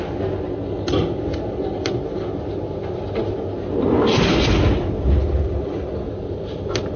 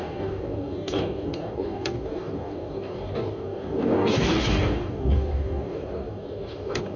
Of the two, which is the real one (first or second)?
first